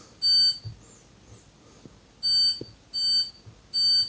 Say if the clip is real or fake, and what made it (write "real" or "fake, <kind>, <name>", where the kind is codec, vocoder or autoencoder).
real